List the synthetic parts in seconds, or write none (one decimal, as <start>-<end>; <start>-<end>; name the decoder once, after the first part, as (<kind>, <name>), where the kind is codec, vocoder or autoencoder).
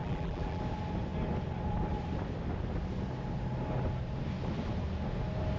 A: 0.0-0.6 (vocoder, BigVGAN v2)